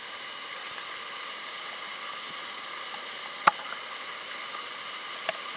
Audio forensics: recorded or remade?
recorded